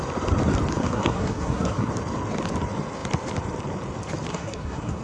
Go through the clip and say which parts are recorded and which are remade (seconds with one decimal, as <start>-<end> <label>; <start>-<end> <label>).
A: 0.0-0.7 recorded; 0.7-1.9 remade; 1.9-4.3 recorded; 4.3-5.0 remade